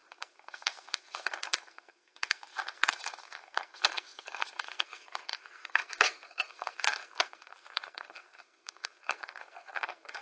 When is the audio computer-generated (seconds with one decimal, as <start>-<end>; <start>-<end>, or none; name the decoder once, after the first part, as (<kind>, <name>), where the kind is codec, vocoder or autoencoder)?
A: 0.0-10.2 (codec, SNAC)